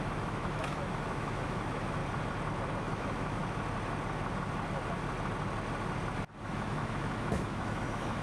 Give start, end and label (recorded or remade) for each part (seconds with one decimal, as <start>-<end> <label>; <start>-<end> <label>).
0.0-2.0 remade; 2.0-2.8 recorded; 2.8-3.4 remade; 3.4-6.5 recorded; 6.5-8.2 remade